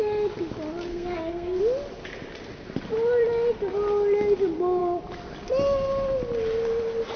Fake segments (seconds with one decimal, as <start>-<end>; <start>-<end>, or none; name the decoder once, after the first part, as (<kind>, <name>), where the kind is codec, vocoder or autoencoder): 0.9-1.6 (codec, SNAC)